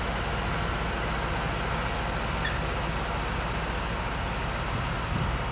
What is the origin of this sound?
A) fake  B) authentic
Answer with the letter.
B